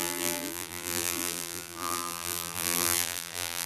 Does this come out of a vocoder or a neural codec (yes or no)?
yes